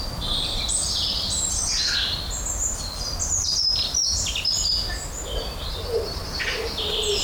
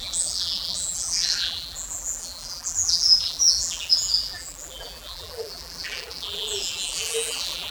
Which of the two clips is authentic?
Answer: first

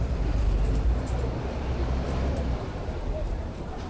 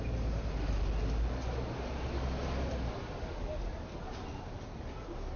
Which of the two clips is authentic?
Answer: second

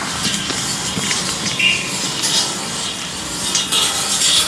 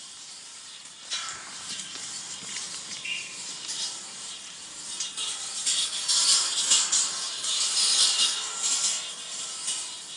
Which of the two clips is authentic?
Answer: first